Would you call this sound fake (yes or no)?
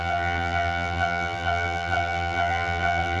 yes